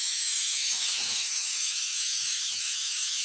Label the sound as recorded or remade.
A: remade